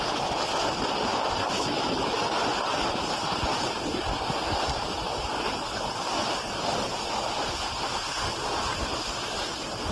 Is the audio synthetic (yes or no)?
no